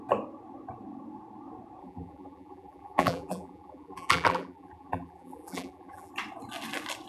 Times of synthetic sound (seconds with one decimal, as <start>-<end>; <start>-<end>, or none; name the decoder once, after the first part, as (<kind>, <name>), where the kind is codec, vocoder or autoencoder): 1.8-6.1 (vocoder, BigVGAN v2)